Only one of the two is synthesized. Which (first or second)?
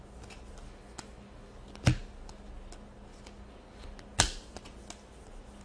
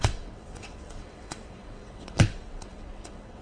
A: second